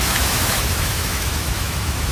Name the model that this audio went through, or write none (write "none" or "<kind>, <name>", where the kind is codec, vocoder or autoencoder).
autoencoder, DAC-VAE